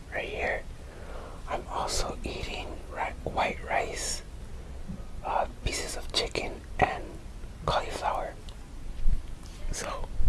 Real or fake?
real